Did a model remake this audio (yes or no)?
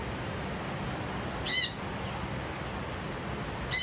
no